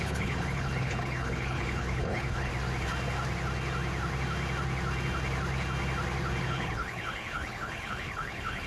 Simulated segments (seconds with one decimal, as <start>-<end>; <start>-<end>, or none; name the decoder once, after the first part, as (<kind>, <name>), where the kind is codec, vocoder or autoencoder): 0.0-2.5 (codec, HILCodec); 6.4-8.7